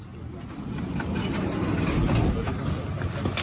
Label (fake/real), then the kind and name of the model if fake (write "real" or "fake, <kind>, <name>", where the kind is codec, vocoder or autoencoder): real